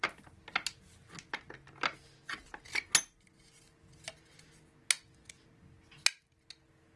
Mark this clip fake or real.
real